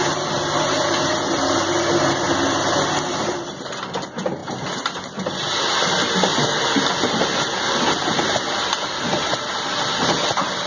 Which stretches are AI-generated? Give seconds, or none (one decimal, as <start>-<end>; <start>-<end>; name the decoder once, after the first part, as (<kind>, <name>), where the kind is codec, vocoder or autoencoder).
none